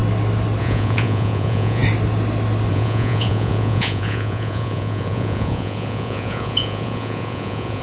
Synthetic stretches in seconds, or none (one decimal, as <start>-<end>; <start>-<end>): 0.6-1.8; 2.7-7.8